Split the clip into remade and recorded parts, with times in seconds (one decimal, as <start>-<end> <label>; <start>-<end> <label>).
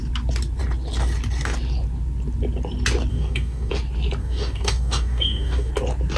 0.0-3.1 recorded; 3.1-3.7 remade; 3.7-4.2 recorded; 4.2-5.7 remade; 5.7-6.2 recorded